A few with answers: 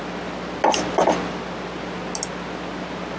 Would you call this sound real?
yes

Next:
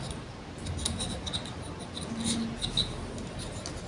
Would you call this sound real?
yes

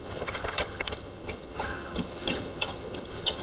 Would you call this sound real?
no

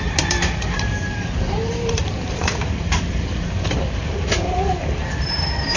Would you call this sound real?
no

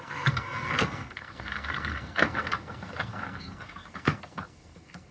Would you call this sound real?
no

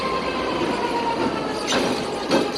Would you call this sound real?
yes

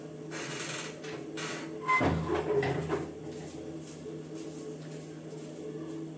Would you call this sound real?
yes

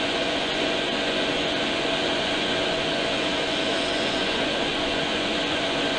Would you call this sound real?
no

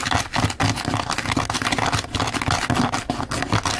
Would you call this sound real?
yes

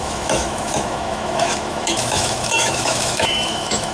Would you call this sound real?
no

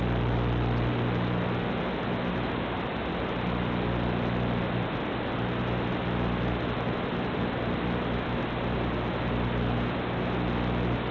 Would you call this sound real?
yes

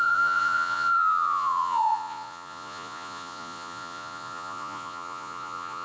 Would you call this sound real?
no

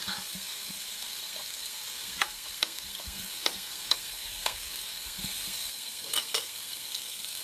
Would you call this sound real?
no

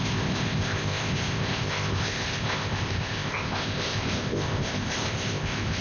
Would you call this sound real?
no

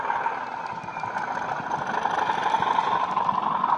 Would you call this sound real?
yes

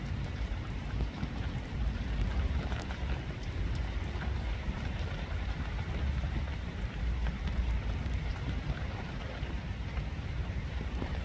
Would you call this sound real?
no